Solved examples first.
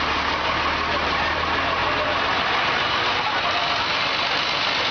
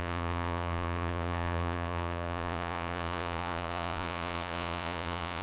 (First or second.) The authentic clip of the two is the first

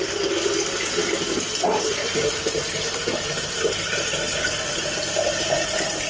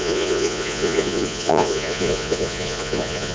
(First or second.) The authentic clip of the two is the first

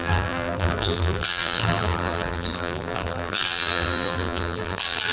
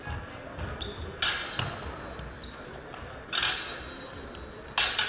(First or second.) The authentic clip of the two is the second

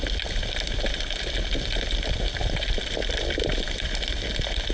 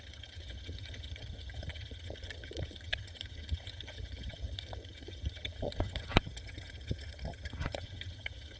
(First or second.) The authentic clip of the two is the first